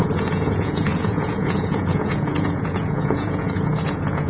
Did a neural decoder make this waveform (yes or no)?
yes